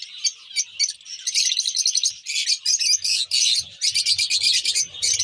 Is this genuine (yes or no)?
yes